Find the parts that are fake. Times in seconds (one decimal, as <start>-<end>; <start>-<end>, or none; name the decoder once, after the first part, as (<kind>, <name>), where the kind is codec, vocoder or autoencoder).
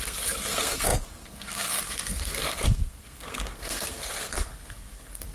0.0-5.3 (codec, SNAC)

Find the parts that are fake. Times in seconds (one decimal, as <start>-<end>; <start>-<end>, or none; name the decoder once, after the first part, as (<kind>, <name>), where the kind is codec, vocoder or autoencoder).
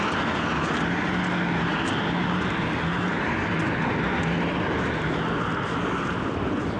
none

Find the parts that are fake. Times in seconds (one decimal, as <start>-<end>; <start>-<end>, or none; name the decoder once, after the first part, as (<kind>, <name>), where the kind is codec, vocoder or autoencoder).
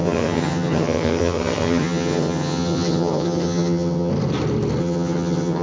0.0-4.1 (vocoder, HiFi-GAN); 4.8-5.6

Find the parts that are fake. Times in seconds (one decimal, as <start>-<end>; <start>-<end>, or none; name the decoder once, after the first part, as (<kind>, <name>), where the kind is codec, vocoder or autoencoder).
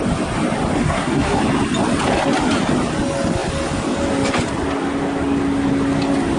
0.8-1.4 (codec, SNAC)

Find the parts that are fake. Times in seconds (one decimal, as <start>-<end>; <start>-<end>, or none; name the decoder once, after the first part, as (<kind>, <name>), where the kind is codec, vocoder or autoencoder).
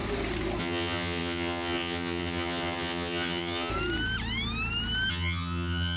0.6-3.7 (vocoder, HiFi-GAN); 5.1-6.0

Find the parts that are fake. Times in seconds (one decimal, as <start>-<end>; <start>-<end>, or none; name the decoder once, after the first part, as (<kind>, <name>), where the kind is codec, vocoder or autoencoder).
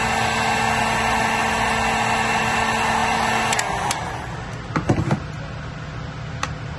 none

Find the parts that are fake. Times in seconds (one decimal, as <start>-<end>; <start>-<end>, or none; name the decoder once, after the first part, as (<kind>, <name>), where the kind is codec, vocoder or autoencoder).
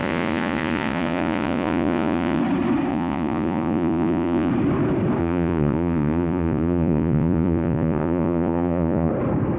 0.0-2.4 (vocoder, Vocos); 2.9-4.5; 5.2-9.1